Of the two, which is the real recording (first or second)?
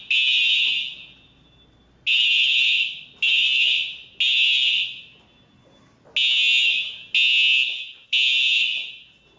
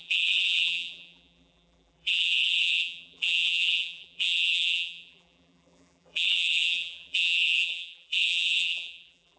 first